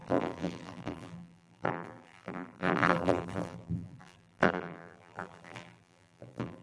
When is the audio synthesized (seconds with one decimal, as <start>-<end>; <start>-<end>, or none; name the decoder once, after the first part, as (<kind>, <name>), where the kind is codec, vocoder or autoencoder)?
0.0-6.6 (vocoder, BigVGAN v2)